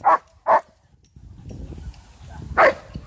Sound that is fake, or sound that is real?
real